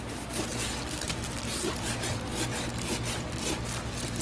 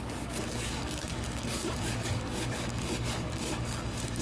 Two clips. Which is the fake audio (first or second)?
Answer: second